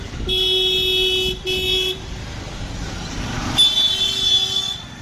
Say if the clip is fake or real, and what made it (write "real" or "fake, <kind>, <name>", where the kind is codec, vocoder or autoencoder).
real